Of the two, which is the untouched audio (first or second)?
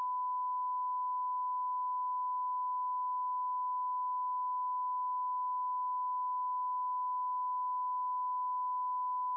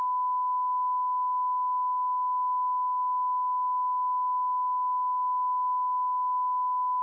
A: first